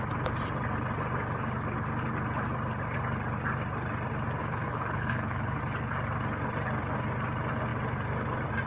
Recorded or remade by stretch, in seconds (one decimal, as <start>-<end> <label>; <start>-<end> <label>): 0.0-4.4 recorded; 4.4-5.6 remade; 5.6-8.7 recorded